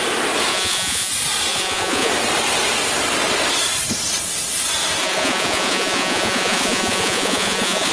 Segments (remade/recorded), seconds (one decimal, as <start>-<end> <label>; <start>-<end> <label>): 0.0-0.5 recorded; 0.5-1.1 remade; 1.1-1.5 recorded; 1.5-2.1 remade; 2.1-5.0 recorded; 5.0-7.9 remade